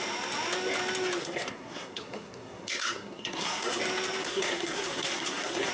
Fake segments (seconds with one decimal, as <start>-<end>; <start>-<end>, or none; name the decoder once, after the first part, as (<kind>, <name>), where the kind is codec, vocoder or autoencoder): 1.2-3.8 (codec, SNAC); 4.2-5.7